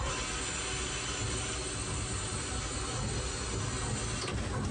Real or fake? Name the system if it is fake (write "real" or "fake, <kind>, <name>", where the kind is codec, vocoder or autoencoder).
real